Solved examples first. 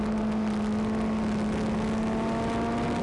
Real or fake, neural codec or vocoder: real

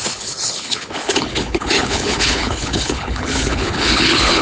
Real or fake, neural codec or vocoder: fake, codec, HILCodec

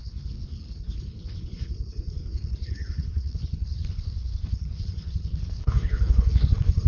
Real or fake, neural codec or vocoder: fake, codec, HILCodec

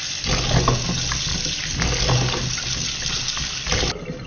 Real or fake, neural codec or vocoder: real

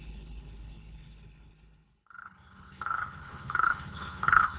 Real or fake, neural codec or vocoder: fake, codec, HILCodec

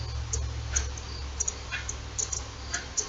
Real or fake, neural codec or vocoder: real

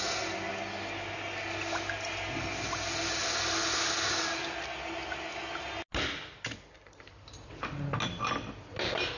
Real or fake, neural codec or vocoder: real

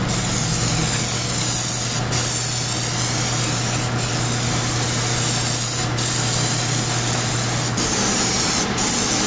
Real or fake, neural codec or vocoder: real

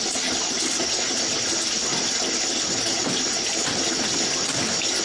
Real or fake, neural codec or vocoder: real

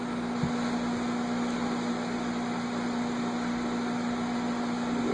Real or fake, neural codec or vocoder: real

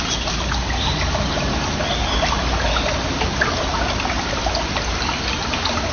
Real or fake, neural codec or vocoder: real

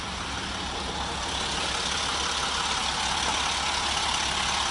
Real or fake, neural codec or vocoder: real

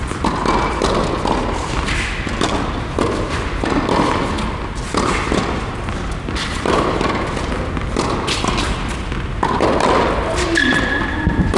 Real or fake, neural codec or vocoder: real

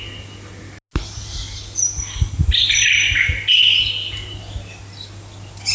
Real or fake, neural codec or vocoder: real